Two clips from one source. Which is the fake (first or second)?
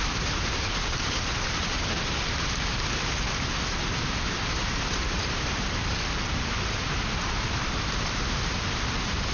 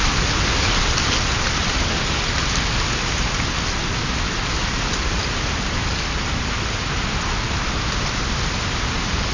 first